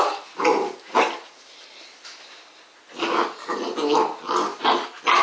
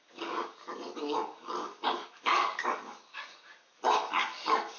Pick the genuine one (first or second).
first